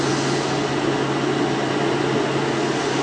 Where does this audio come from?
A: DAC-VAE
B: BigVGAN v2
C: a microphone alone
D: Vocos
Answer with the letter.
C